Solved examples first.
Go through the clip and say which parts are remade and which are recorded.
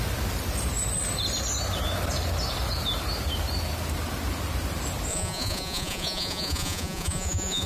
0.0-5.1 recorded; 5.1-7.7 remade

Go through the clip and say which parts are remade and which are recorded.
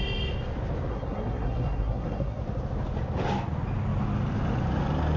0.0-0.9 recorded; 0.9-2.4 remade; 2.4-5.2 recorded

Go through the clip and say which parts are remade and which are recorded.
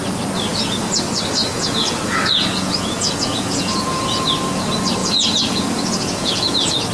0.0-1.4 recorded; 1.4-4.3 remade; 4.3-5.0 recorded; 5.0-6.9 remade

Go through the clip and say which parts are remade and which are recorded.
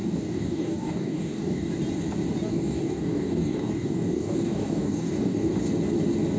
0.0-1.7 remade; 1.7-2.5 recorded; 2.5-5.5 remade; 5.5-6.4 recorded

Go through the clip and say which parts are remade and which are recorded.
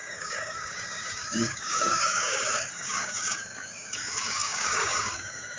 0.0-5.6 remade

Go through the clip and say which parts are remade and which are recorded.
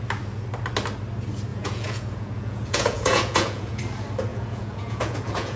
0.0-1.5 recorded; 1.5-3.8 remade; 3.8-4.3 recorded; 4.3-5.6 remade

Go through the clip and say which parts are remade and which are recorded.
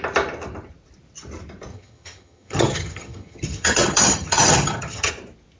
0.0-1.7 recorded; 1.7-5.1 remade; 5.1-5.6 recorded